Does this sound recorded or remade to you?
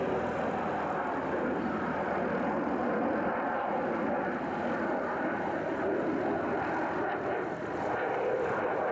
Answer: remade